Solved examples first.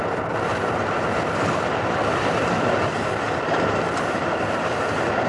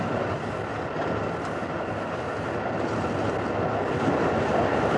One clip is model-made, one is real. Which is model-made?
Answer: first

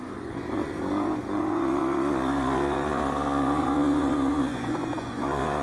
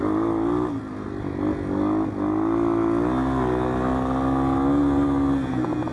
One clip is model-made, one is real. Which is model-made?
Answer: first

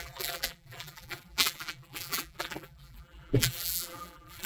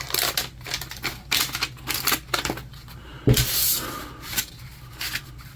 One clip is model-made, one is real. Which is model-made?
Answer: first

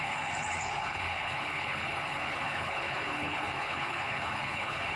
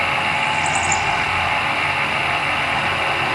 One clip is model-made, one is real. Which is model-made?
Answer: first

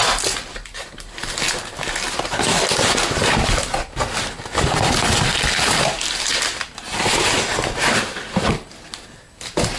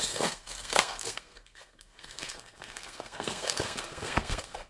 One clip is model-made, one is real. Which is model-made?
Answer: second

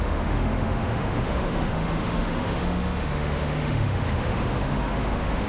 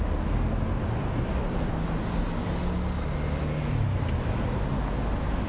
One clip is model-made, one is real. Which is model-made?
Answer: first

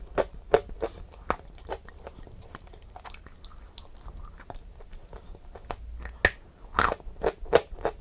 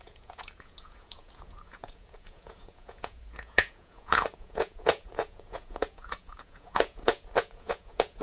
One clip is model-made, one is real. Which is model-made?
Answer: second